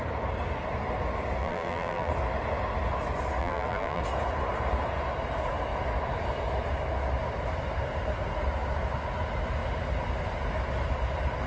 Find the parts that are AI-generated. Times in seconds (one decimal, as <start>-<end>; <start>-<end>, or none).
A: 1.4-2.1; 3.4-4.0